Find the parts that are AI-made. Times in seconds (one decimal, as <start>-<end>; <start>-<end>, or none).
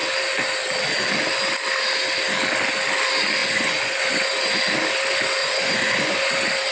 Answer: 3.4-4.4; 5.4-6.3